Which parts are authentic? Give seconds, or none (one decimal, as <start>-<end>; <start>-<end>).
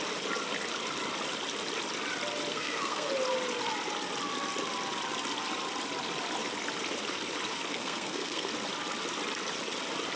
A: 0.0-2.5; 3.1-7.7; 8.5-10.2